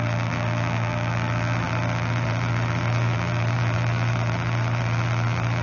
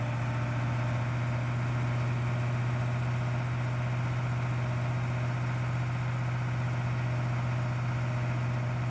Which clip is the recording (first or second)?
second